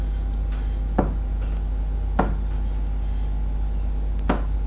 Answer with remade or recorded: recorded